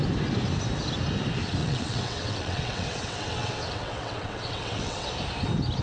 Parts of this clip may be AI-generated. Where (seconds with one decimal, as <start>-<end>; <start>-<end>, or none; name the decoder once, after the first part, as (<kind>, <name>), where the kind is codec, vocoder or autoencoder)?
1.6-5.1 (vocoder, WaveNeXt)